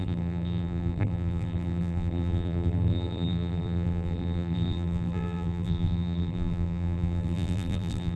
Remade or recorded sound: remade